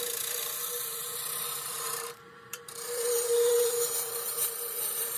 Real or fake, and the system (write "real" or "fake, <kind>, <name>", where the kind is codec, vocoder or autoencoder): fake, vocoder, BigVGAN v2